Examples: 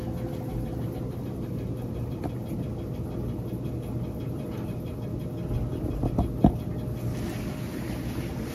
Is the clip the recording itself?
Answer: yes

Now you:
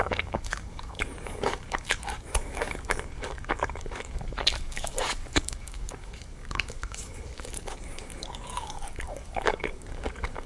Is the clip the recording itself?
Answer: no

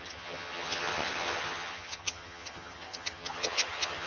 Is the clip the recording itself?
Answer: no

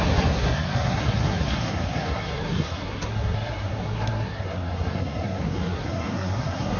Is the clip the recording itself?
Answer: no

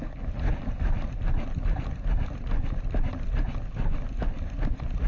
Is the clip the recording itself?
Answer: yes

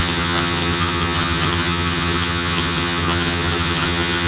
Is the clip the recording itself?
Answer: no